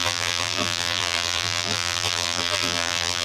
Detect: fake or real fake